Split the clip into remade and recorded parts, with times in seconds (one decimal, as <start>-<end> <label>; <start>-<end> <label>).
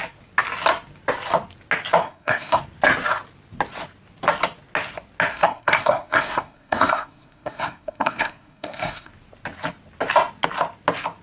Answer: 0.0-2.0 recorded; 2.0-2.6 remade; 2.6-5.3 recorded; 5.3-9.1 remade; 9.1-11.2 recorded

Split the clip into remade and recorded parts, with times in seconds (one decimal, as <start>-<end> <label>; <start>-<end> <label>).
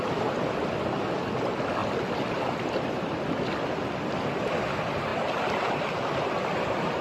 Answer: 0.0-7.0 recorded